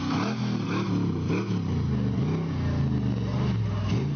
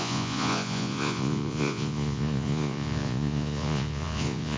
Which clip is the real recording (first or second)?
first